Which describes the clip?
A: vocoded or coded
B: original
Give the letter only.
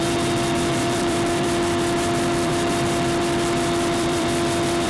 A